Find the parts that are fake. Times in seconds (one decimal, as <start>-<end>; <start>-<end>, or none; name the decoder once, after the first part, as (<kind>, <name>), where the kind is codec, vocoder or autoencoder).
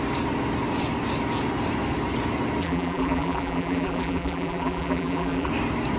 2.6-5.5 (vocoder, BigVGAN v2)